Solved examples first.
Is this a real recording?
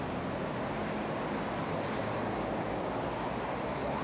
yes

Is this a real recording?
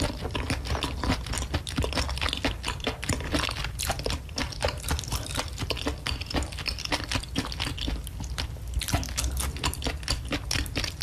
yes